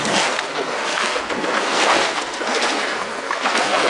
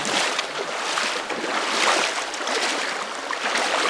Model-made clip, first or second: first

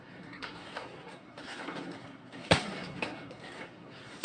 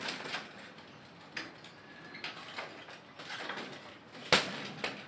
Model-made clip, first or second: first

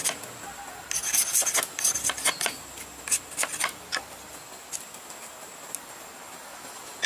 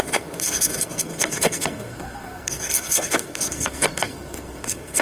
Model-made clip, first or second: second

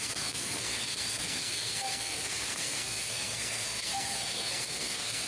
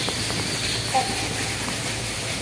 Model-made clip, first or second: first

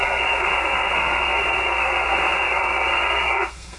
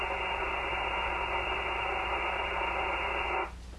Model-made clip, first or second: first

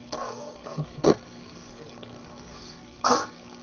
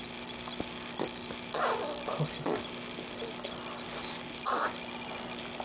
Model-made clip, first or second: first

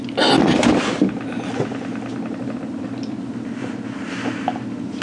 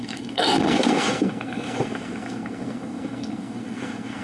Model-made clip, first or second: second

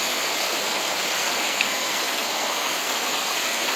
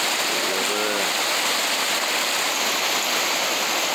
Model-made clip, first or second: first